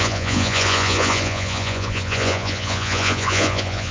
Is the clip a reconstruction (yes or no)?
yes